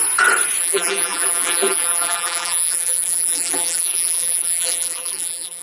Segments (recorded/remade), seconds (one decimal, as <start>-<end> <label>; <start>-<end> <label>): 0.0-0.6 recorded; 0.6-5.6 remade